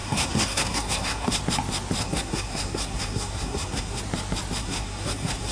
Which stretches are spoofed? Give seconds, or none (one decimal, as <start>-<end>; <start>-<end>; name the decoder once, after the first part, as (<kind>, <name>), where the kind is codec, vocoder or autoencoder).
0.0-1.4 (codec, SNAC); 2.0-4.0; 4.6-5.5